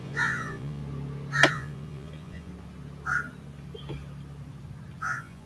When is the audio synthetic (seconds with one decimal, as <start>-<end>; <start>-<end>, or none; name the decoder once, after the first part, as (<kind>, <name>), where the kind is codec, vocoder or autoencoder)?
0.0-0.8 (vocoder, Vocos); 1.5-2.5; 5.0-5.5